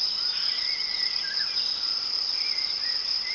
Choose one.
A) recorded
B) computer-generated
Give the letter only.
A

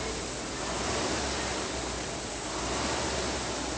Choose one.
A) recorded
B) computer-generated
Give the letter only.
A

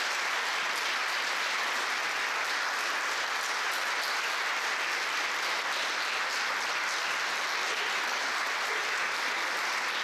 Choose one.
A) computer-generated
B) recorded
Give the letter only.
B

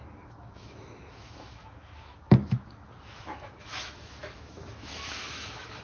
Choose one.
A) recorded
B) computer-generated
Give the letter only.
B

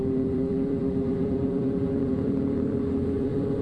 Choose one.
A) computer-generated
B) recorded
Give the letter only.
A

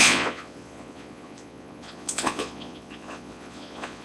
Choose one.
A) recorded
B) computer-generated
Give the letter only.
B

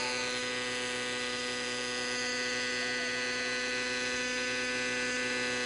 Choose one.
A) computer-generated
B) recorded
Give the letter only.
B